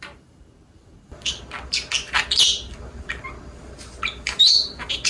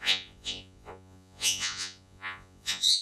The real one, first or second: first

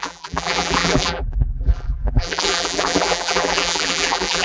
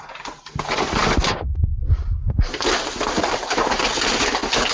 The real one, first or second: second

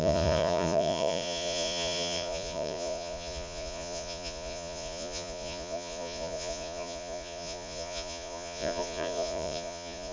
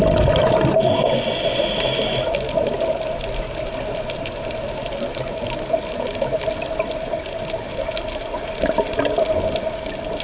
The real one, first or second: second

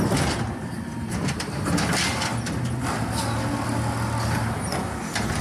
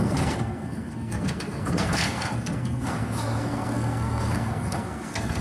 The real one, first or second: first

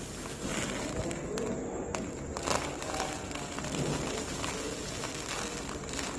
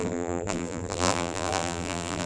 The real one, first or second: first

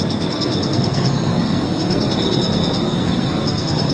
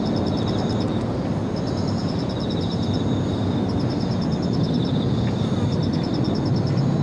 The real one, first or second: second